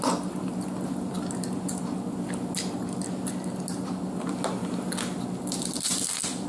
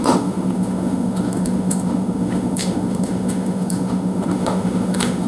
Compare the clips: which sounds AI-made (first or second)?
second